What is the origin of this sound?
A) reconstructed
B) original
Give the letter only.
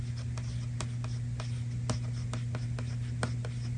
B